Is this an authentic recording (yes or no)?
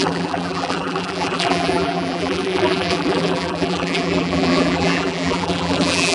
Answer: no